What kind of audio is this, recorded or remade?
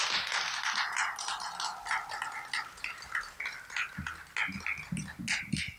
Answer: recorded